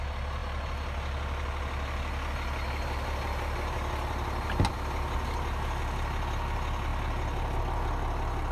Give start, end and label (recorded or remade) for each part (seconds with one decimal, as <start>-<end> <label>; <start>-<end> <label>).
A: 0.0-8.5 recorded